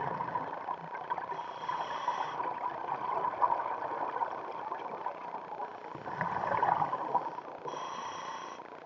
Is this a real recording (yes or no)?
no